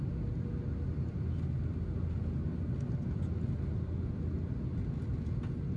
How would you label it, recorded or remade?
recorded